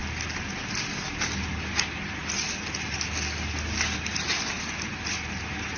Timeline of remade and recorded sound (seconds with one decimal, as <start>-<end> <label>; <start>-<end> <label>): 0.0-5.8 recorded